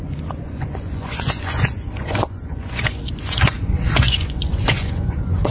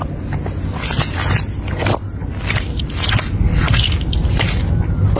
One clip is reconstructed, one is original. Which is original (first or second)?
second